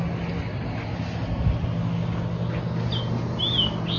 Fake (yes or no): no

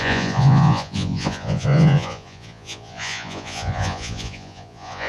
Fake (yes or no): yes